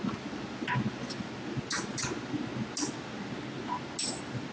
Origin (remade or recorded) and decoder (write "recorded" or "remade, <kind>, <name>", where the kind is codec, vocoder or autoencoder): recorded